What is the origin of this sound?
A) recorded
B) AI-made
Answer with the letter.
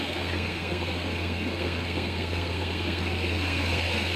B